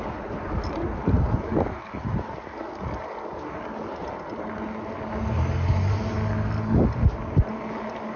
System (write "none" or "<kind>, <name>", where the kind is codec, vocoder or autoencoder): none